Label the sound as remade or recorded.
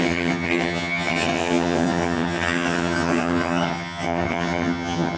remade